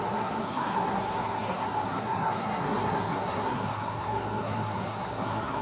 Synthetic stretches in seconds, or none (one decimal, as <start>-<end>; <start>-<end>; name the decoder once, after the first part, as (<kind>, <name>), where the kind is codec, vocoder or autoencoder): 0.0-5.6 (codec, SNAC)